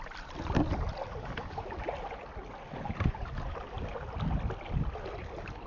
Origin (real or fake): real